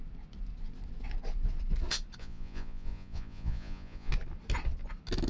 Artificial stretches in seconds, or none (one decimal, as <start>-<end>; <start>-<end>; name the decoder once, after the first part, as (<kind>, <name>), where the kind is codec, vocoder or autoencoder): 2.2-4.1 (vocoder, Vocos)